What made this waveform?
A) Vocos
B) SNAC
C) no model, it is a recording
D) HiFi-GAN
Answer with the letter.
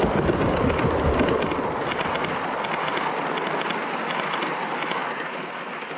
C